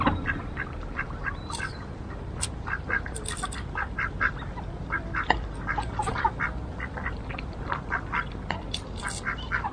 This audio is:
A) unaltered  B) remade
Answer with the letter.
B